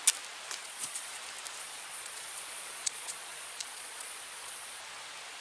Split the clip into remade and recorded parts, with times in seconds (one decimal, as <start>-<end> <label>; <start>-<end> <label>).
0.0-0.6 recorded; 0.6-1.1 remade; 1.1-1.6 recorded; 1.6-4.8 remade; 4.8-5.4 recorded